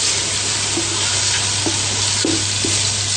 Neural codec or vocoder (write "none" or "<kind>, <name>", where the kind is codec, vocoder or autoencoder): none